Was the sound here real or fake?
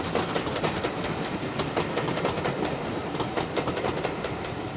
real